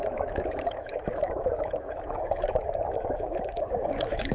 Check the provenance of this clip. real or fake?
fake